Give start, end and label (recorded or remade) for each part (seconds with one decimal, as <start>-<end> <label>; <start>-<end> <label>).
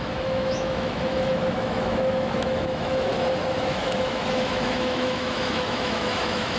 0.0-3.1 remade; 3.1-3.6 recorded; 3.6-6.6 remade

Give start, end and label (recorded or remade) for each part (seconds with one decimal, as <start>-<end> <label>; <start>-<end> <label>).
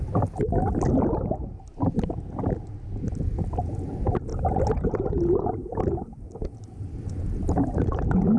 0.0-8.4 recorded